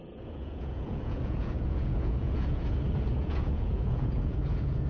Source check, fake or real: fake